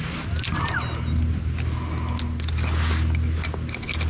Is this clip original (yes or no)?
yes